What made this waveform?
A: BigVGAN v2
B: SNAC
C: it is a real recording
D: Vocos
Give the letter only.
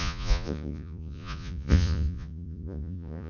D